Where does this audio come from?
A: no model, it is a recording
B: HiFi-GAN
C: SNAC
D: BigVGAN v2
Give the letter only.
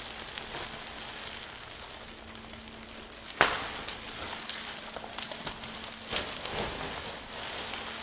A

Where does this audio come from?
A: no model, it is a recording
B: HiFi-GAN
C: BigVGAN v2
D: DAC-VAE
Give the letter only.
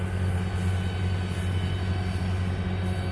A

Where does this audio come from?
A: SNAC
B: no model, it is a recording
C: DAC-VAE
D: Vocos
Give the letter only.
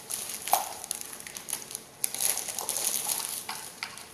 B